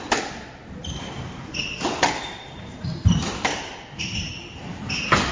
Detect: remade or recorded recorded